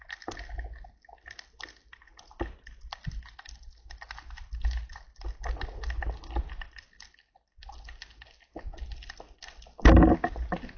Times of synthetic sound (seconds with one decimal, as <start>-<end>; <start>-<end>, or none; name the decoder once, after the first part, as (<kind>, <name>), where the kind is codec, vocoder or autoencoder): none

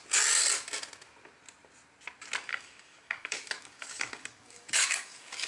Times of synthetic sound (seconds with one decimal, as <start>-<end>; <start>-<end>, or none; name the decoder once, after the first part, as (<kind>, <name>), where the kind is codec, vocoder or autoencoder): 2.5-5.5 (codec, DAC)

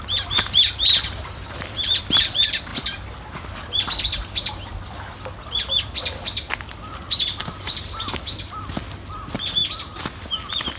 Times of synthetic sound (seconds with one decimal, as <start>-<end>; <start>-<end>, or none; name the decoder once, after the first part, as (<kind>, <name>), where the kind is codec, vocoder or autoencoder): none

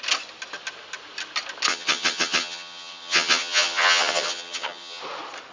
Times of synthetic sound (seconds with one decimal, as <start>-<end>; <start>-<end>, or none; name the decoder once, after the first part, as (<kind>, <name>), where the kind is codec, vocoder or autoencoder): 1.7-5.0 (vocoder, HiFi-GAN)

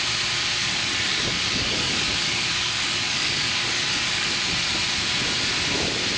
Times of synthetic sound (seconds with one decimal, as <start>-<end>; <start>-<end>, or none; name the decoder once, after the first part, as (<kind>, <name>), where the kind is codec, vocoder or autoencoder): 0.6-4.3 (codec, DAC)

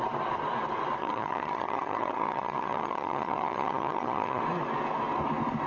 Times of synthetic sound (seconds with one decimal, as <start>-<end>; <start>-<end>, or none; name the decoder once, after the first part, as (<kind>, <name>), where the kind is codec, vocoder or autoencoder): 1.0-4.4 (vocoder, HiFi-GAN)

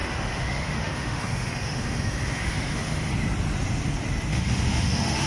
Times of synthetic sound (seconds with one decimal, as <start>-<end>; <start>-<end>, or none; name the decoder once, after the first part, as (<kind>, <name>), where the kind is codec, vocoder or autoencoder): 0.0-3.1 (autoencoder, DAC-VAE); 4.3-5.3

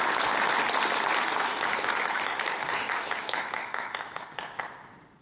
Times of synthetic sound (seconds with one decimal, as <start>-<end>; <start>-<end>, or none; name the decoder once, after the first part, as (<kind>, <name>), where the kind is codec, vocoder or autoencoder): 1.5-4.6 (autoencoder, DAC-VAE)